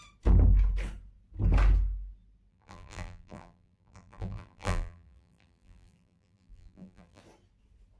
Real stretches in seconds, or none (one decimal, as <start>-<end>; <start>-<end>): 0.0-2.5; 7.2-8.0